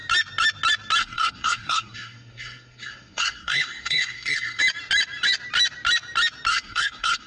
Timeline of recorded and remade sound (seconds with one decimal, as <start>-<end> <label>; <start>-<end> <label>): 0.0-1.0 recorded; 1.0-4.6 remade; 4.6-6.5 recorded; 6.5-7.3 remade